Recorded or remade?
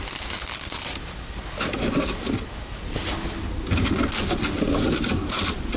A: recorded